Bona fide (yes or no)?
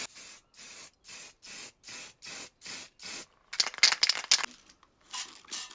yes